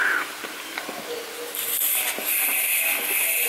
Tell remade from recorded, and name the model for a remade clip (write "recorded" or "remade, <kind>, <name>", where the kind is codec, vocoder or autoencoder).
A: recorded